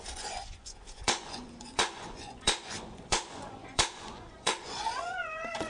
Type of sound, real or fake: fake